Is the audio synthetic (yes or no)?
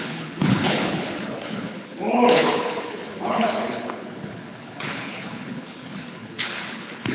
yes